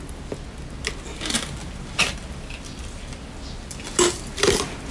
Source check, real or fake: real